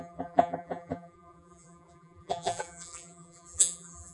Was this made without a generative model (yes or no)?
no